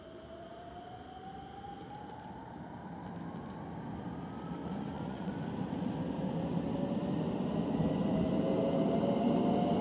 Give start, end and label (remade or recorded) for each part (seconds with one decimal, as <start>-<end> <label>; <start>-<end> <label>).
0.0-4.6 recorded; 4.6-5.3 remade; 5.3-9.8 recorded